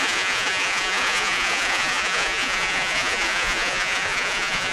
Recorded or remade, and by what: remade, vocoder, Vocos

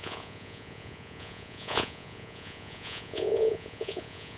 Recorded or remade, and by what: remade, vocoder, Vocos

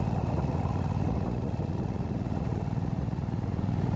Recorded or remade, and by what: remade, vocoder, Vocos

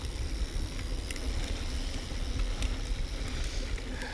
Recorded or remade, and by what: recorded